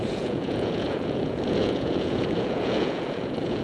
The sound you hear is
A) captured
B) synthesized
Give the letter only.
B